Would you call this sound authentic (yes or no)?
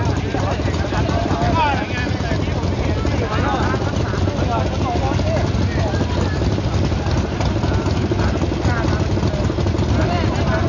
yes